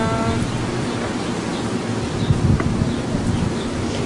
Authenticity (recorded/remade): recorded